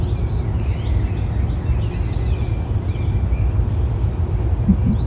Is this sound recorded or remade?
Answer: recorded